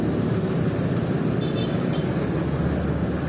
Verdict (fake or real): real